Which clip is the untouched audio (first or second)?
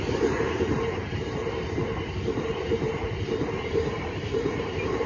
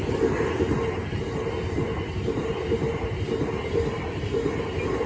second